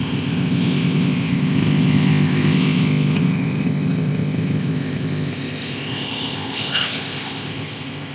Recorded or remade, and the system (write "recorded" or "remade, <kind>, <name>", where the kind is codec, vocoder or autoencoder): remade, codec, ZipCodec